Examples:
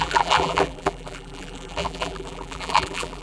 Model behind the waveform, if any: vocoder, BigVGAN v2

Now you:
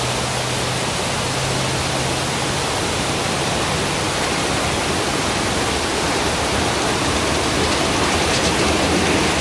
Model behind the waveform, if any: none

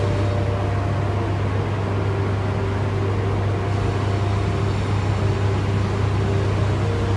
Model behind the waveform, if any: none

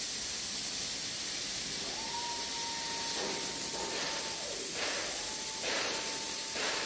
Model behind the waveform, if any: none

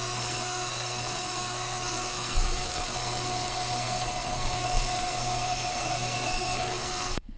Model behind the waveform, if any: codec, SNAC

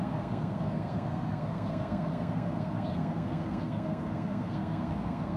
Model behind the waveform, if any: codec, SNAC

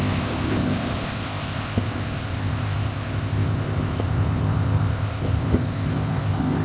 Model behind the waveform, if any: codec, ZipCodec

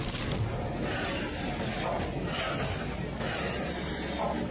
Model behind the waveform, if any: none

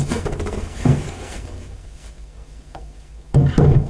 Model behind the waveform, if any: codec, SNAC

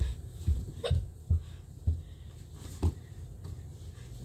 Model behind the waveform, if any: none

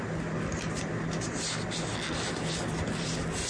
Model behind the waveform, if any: none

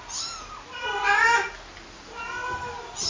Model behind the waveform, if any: none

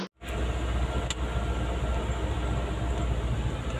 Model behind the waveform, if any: none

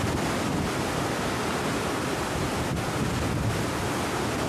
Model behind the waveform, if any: none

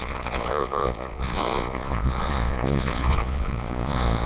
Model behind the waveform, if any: vocoder, Vocos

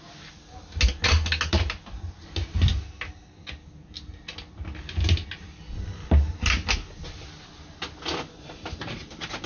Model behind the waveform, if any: none